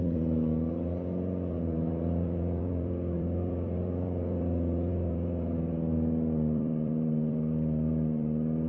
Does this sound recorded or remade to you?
remade